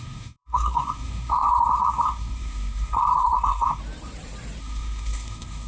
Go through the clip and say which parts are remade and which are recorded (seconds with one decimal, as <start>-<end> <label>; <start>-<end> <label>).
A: 0.0-3.8 remade; 3.8-4.6 recorded; 4.6-5.7 remade